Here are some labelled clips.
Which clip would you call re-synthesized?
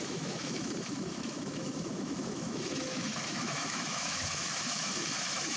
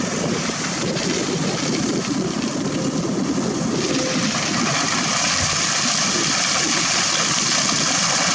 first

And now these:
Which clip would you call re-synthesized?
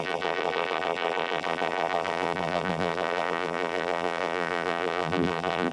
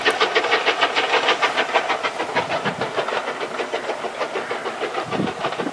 first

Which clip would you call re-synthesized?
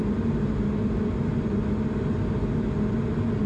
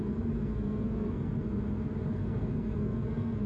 second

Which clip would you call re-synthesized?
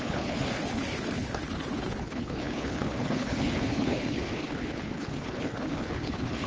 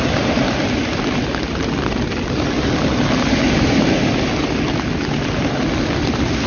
first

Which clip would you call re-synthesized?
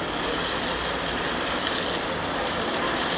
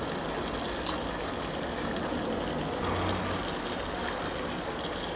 first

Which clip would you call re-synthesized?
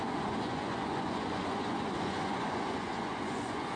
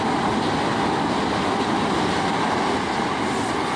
first